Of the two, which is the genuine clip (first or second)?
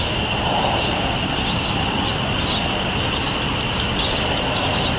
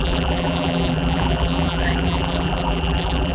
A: first